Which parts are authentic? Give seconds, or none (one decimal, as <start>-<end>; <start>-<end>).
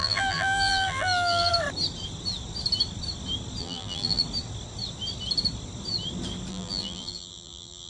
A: 1.5-3.6; 4.2-6.5